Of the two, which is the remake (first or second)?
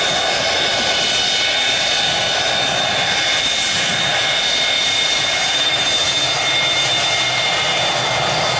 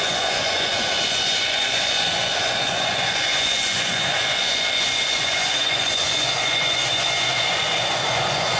second